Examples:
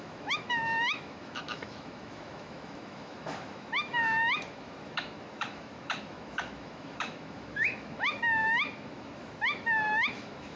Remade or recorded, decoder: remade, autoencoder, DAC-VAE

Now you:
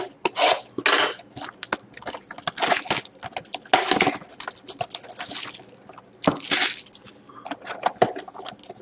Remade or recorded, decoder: recorded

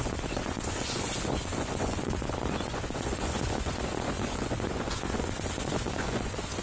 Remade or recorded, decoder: remade, vocoder, Vocos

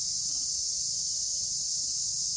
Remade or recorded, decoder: recorded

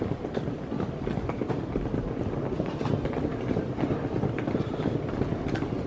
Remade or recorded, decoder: recorded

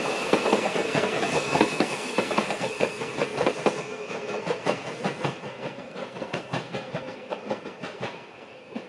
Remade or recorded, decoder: remade, codec, SNAC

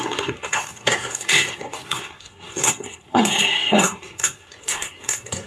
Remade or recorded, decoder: remade, codec, SNAC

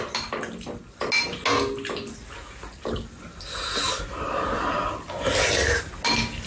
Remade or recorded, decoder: recorded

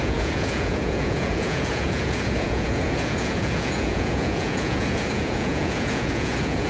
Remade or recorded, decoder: remade, vocoder, Vocos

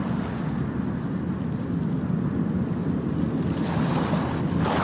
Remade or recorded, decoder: recorded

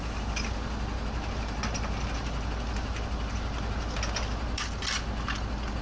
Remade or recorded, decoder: recorded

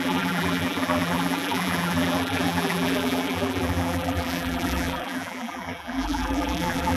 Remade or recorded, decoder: remade, vocoder, BigVGAN v2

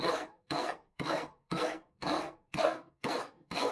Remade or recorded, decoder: remade, codec, SNAC